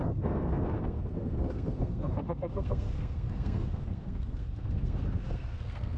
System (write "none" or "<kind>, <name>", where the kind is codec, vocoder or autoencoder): codec, SNAC